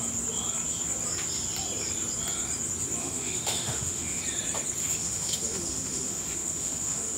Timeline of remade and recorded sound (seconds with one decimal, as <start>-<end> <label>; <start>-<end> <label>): 0.0-3.0 recorded; 3.0-4.2 remade; 4.2-4.8 recorded; 4.8-7.2 remade